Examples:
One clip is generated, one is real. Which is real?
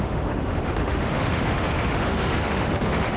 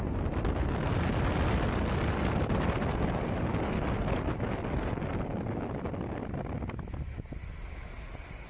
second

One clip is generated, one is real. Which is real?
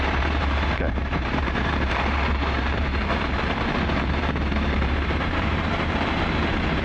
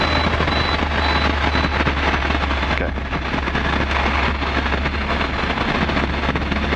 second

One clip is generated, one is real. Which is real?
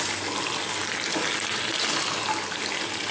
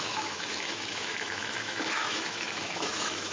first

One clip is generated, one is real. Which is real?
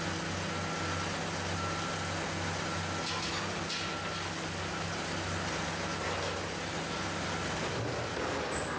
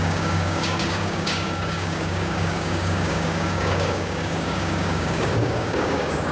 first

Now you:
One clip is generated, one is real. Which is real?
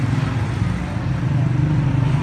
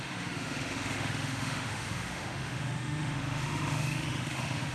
first